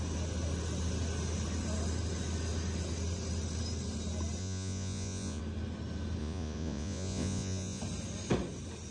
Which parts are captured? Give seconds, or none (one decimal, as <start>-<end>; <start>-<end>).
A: 0.0-4.4; 5.4-6.2; 7.8-8.9

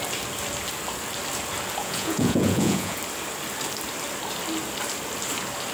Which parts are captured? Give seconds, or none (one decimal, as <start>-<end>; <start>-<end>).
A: 0.0-1.8; 3.0-5.7

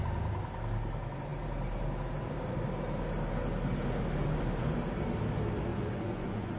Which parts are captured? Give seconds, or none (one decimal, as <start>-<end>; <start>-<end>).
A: 0.0-5.7

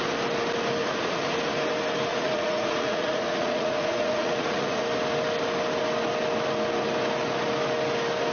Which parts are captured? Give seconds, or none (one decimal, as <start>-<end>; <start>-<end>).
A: 0.0-0.8; 1.4-2.1; 4.8-8.3

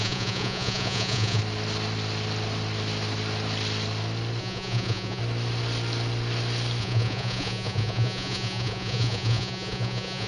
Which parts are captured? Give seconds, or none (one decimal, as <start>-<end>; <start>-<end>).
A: 1.4-4.4; 5.2-6.8

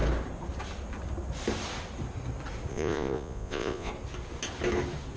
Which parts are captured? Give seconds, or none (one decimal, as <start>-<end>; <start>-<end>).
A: 0.0-2.7; 3.9-5.2

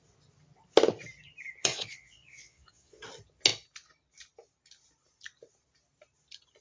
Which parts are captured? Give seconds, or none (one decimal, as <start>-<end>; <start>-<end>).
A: 0.0-1.6; 3.0-6.6